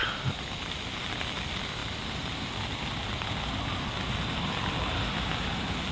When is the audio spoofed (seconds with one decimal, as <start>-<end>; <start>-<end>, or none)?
none